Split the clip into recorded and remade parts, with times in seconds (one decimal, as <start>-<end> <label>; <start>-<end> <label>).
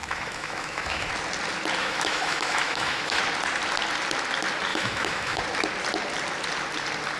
0.0-1.1 remade; 1.1-1.8 recorded; 1.8-3.2 remade; 3.2-4.7 recorded; 4.7-5.4 remade; 5.4-7.2 recorded